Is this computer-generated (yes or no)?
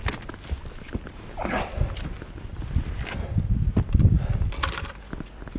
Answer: no